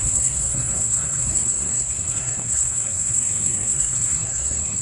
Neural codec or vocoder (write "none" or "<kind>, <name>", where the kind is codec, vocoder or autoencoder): codec, SNAC